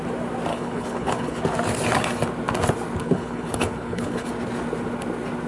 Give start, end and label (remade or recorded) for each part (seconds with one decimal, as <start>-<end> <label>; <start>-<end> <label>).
0.0-0.5 recorded; 0.5-1.4 remade; 1.4-3.0 recorded; 3.0-4.3 remade; 4.3-5.5 recorded